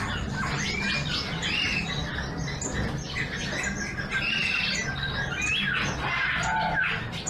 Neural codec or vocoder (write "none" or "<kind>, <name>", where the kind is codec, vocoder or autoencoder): none